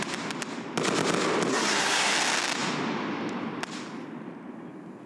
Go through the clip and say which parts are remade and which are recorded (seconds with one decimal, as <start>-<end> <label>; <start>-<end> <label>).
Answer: 0.0-1.5 recorded; 1.5-2.1 remade; 2.1-5.1 recorded

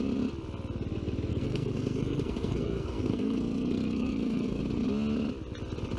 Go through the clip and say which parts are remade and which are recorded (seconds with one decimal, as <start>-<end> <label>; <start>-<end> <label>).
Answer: 0.0-1.3 recorded; 1.3-4.6 remade; 4.6-6.0 recorded

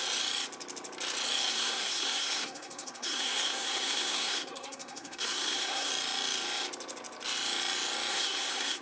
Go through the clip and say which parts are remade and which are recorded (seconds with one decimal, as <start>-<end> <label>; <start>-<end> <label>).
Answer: 0.0-1.5 recorded; 1.5-5.9 remade; 5.9-8.1 recorded; 8.1-8.8 remade